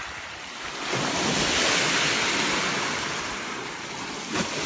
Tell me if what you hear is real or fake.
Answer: real